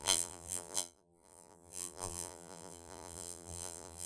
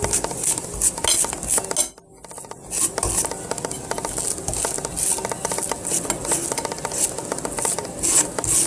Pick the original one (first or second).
second